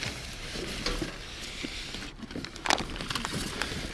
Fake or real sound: real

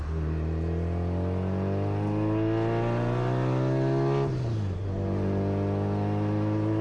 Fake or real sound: real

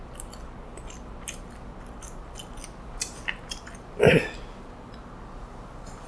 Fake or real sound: real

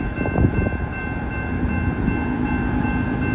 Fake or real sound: real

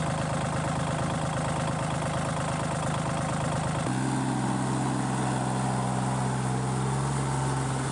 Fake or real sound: real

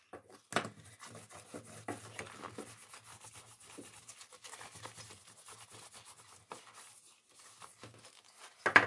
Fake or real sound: real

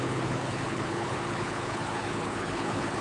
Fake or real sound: fake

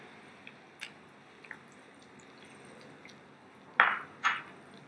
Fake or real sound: real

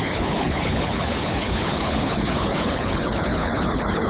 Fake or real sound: fake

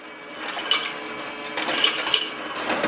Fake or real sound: real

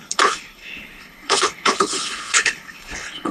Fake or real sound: fake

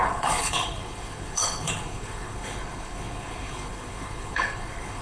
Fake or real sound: fake